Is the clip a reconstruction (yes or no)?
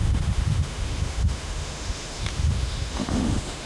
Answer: yes